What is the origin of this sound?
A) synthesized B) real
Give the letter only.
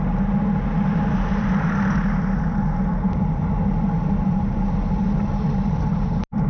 B